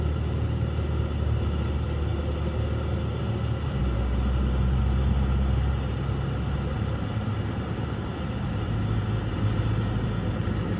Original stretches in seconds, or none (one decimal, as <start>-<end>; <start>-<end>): 0.0-10.8